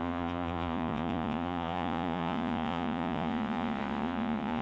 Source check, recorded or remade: remade